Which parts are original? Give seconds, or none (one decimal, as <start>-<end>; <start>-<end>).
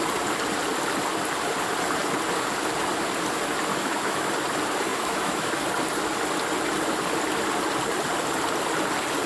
0.0-3.7; 4.3-4.9; 5.5-9.3